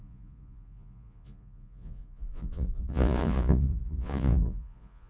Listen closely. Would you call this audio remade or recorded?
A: remade